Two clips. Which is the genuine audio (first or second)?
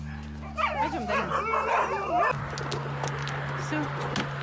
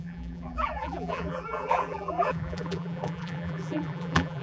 first